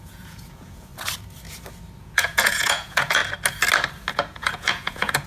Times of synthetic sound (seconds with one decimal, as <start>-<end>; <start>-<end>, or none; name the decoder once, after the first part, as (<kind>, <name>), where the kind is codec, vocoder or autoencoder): 0.0-0.9 (vocoder, Vocos); 2.0-3.2; 4.1-5.3